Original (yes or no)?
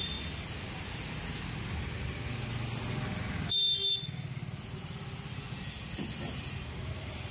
yes